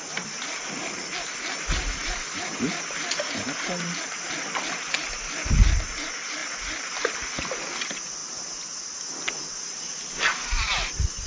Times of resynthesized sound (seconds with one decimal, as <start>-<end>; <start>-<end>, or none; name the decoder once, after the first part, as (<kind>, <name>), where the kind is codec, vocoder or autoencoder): none